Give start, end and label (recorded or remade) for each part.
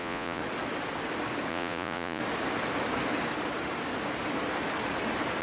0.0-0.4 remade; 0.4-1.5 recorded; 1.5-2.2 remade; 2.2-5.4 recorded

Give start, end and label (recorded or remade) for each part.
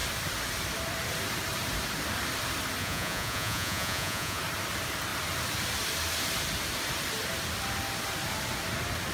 0.0-2.8 recorded; 2.8-4.4 remade; 4.4-9.1 recorded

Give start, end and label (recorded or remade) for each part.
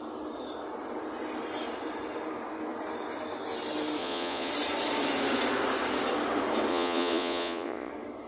0.0-4.0 recorded; 4.0-4.5 remade; 4.5-6.7 recorded; 6.7-7.9 remade; 7.9-8.3 recorded